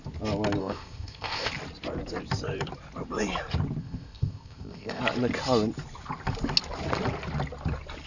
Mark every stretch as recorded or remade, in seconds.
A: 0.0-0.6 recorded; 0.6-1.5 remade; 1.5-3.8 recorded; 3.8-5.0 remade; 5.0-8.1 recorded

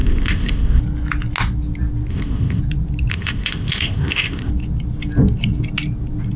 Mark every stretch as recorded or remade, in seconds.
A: 0.0-0.8 remade; 0.8-2.1 recorded; 2.1-2.6 remade; 2.6-3.1 recorded; 3.1-4.5 remade; 4.5-6.4 recorded

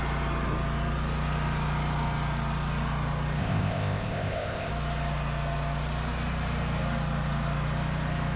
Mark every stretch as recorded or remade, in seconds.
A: 0.0-3.4 recorded; 3.4-4.7 remade; 4.7-8.4 recorded

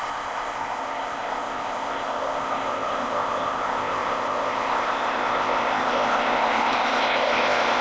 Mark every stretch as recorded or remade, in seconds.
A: 0.0-7.8 remade

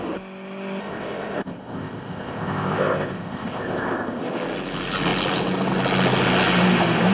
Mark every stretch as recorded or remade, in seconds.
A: 0.0-0.8 recorded; 0.8-4.2 remade; 4.2-7.1 recorded